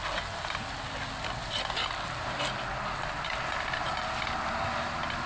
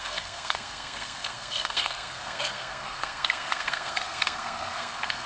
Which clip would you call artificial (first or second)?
second